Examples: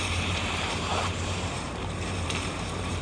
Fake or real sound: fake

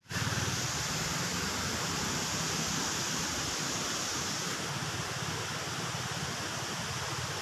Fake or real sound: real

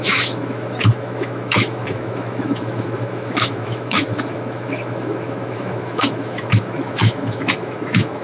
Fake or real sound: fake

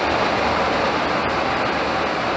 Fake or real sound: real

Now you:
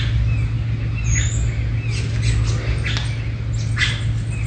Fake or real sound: real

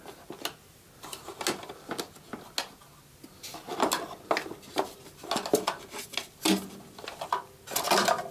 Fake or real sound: real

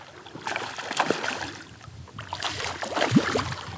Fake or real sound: real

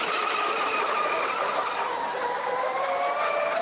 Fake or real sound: real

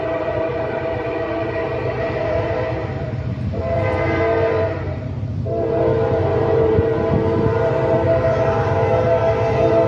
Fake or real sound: fake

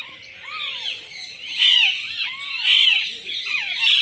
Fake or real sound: real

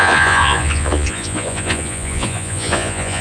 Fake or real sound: fake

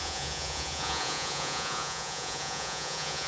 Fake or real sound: fake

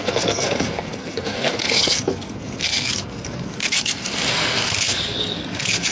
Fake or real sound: fake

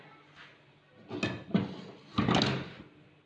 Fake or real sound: real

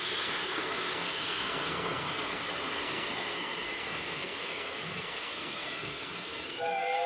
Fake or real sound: fake